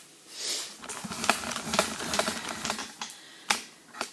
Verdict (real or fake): real